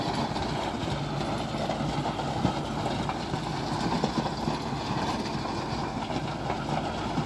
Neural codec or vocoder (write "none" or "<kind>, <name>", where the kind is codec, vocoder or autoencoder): none